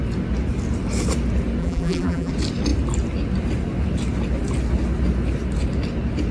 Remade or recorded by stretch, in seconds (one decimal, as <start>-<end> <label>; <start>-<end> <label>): 0.0-1.6 recorded; 1.6-2.3 remade; 2.3-6.3 recorded